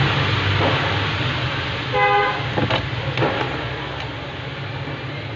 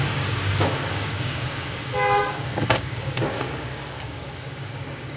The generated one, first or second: second